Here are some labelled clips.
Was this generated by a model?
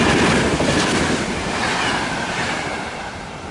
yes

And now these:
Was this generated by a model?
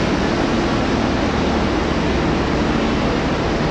no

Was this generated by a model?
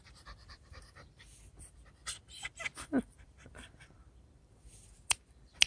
yes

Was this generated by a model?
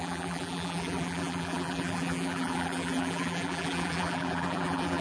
yes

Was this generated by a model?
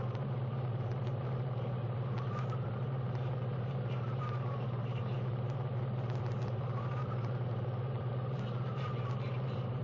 yes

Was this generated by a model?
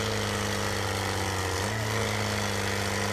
no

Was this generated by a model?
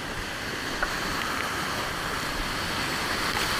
no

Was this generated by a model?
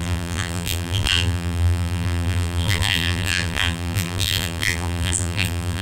yes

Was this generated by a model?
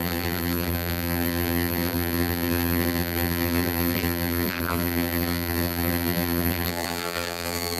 yes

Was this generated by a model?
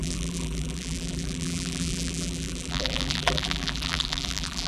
yes